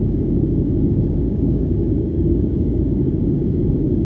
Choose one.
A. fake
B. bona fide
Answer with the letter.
A